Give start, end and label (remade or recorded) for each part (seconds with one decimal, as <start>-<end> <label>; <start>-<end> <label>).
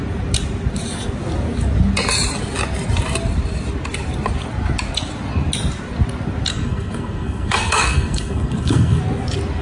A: 0.0-6.5 recorded; 6.5-9.0 remade; 9.0-9.6 recorded